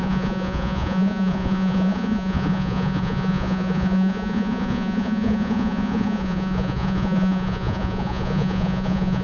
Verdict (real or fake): fake